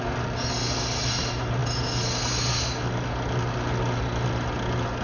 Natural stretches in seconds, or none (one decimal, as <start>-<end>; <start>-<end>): 0.0-5.0